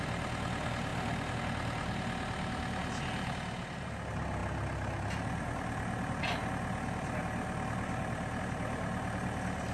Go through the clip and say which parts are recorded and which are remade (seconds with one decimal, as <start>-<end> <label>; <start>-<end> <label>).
0.0-9.7 recorded